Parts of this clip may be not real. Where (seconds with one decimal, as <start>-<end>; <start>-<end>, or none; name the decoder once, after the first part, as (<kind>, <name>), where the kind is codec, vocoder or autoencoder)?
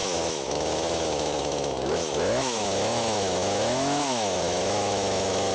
0.0-5.5 (autoencoder, DAC-VAE)